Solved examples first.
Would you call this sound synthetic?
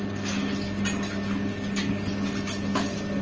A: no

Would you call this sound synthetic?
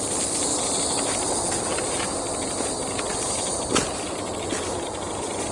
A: no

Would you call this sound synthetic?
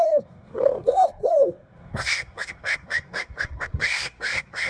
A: yes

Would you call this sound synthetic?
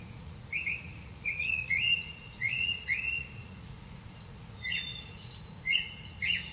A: yes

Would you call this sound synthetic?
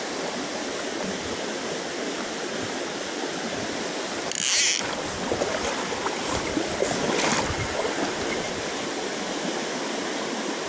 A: no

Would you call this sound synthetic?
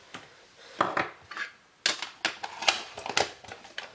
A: no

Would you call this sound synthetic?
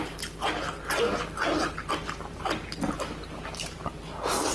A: yes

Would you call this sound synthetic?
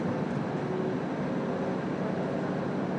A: no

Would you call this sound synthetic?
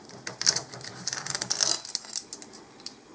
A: no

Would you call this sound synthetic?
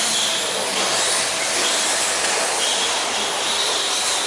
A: no